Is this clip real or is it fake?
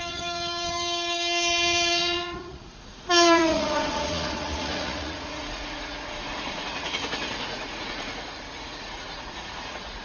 fake